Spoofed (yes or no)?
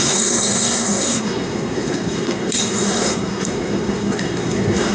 yes